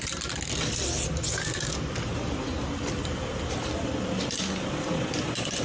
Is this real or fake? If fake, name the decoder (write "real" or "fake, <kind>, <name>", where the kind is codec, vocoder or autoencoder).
real